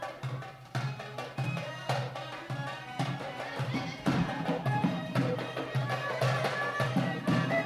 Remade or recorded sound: remade